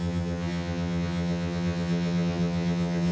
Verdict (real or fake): fake